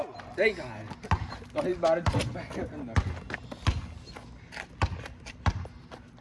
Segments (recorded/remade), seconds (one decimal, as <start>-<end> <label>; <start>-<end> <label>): 0.0-6.2 recorded

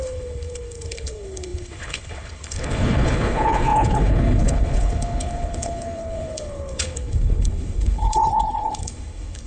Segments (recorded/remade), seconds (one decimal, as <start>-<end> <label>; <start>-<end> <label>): 0.0-9.5 remade